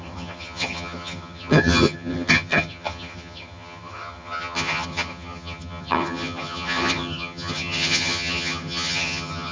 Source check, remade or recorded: remade